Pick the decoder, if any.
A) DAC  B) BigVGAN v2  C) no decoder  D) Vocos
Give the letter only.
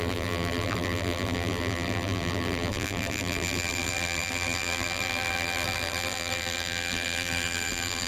B